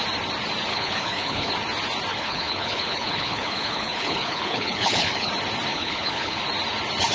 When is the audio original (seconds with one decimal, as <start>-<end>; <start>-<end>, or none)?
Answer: 0.0-0.7; 1.5-2.1; 5.3-5.7; 6.4-7.1